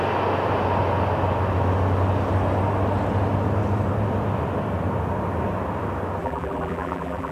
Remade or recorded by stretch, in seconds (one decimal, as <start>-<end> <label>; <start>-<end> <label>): 0.0-6.2 recorded; 6.2-7.3 remade